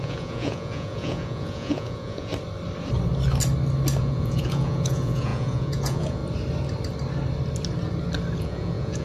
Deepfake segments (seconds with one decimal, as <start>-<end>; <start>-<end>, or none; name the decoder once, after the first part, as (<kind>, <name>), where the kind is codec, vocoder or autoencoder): 0.0-2.3 (vocoder, Vocos); 4.0-6.2; 8.4-9.0